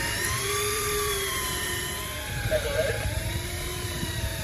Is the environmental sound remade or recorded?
remade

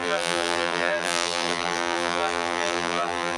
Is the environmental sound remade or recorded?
remade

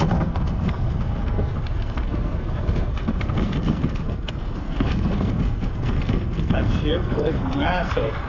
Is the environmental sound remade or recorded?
remade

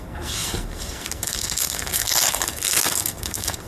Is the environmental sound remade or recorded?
remade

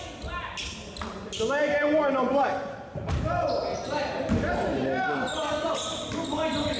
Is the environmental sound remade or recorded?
recorded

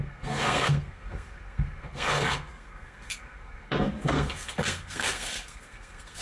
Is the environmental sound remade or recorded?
remade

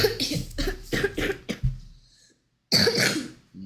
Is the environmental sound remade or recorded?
recorded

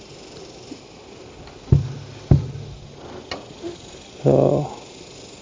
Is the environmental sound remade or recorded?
recorded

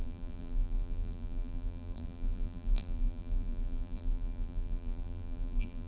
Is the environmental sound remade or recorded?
remade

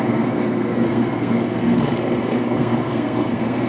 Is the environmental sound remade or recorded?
remade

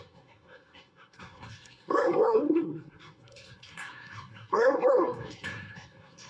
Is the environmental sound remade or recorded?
remade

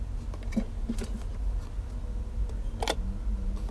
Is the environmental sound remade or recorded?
recorded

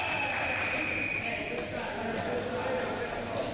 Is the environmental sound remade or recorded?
recorded